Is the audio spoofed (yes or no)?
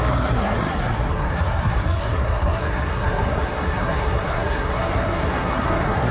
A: yes